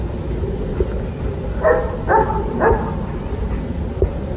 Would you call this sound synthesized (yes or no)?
no